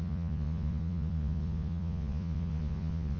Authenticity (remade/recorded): remade